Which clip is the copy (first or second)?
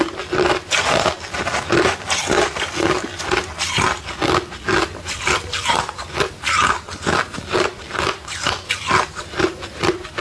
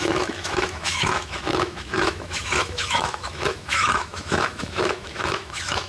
second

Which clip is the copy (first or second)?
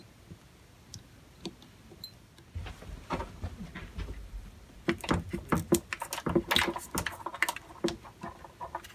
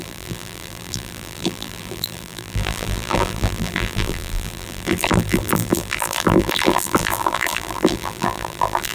second